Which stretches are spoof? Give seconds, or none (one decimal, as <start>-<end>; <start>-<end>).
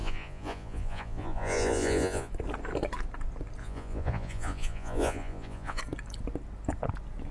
0.0-2.3; 3.6-5.8